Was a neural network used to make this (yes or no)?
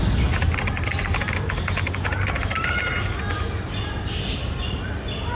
no